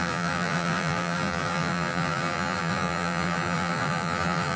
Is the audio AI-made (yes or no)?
yes